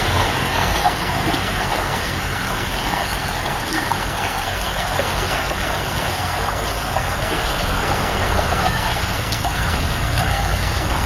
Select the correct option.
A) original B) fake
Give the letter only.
B